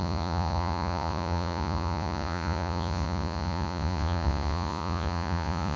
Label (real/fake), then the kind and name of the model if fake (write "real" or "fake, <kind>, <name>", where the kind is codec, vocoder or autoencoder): fake, vocoder, Vocos